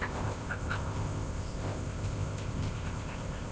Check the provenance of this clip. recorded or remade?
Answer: remade